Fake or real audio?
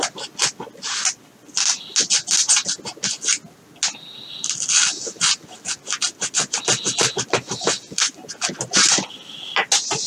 real